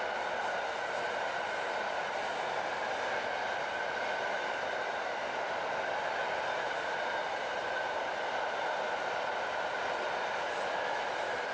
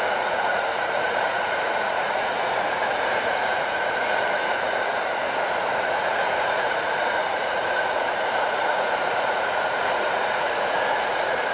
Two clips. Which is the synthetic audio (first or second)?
second